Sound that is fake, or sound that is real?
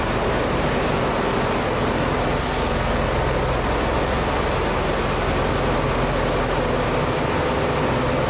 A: real